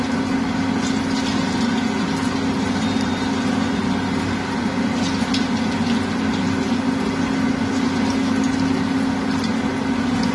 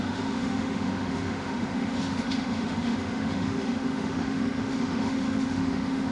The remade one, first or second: second